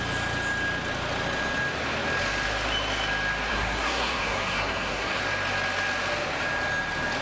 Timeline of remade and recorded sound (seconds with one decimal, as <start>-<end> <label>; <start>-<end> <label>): 0.0-3.5 recorded; 3.5-5.2 remade; 5.2-7.2 recorded